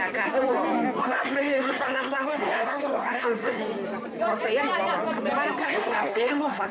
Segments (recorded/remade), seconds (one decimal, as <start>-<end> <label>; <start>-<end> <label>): 0.0-1.0 recorded; 1.0-3.6 remade; 3.6-5.6 recorded; 5.6-6.7 remade